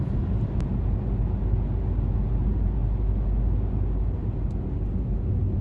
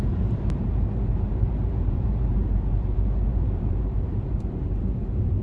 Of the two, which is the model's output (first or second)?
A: second